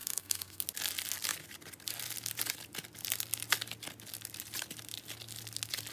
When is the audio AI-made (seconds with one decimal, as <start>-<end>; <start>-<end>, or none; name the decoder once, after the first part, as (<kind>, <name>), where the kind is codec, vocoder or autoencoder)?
0.0-0.6 (codec, SNAC)